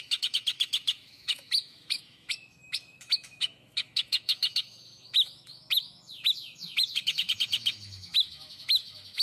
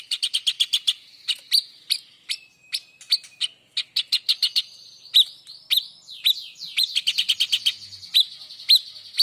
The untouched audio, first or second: second